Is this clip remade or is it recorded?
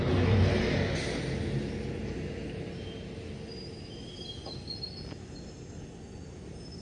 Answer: recorded